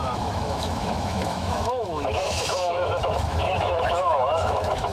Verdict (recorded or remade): remade